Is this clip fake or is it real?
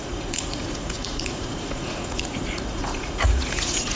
fake